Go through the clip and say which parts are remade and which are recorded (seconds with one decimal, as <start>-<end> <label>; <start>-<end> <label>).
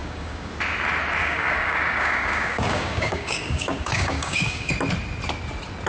0.0-0.5 remade; 0.5-1.2 recorded; 1.2-4.7 remade; 4.7-5.9 recorded